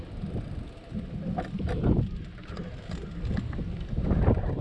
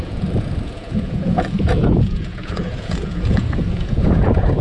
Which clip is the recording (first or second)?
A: first